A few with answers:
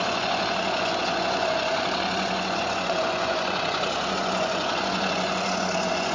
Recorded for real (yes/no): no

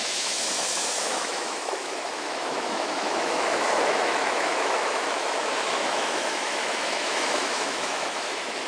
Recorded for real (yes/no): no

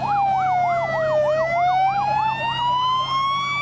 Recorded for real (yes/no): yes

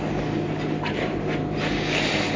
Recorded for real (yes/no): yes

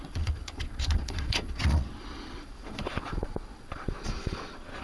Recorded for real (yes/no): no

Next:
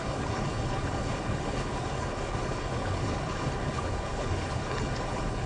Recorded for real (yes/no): no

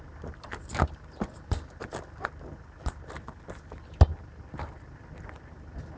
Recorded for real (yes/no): yes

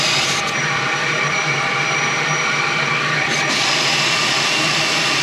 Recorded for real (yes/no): no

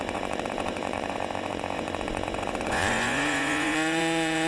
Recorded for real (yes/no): no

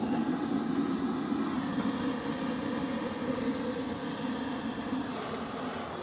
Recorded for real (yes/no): yes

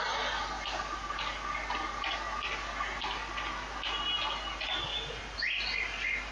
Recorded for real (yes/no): yes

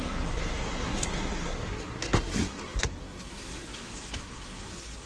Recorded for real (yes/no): no